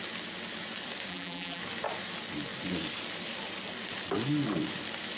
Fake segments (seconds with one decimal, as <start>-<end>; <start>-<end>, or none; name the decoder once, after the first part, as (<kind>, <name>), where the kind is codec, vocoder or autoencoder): 1.1-1.6 (vocoder, BigVGAN v2)